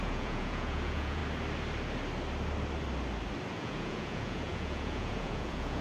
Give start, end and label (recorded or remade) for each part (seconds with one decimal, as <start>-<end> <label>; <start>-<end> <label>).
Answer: 0.0-1.2 remade; 1.2-3.5 recorded; 3.5-5.8 remade